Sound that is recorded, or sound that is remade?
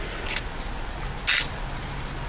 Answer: recorded